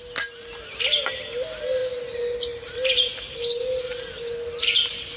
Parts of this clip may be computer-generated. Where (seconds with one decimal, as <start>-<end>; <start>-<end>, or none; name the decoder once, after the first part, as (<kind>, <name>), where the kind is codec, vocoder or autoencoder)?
none